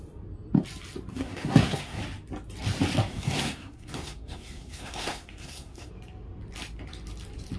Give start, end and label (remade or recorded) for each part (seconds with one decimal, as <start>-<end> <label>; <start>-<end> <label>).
0.0-1.1 recorded; 1.1-2.0 remade; 2.0-3.1 recorded; 3.1-5.9 remade; 5.9-7.6 recorded

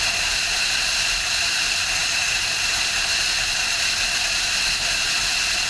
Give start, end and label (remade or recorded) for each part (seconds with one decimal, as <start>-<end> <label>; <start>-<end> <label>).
0.0-5.7 recorded